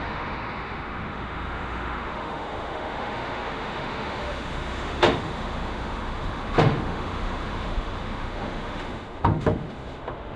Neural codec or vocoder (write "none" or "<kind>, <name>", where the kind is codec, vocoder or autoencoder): autoencoder, DAC-VAE